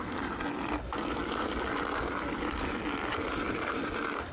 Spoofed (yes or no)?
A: no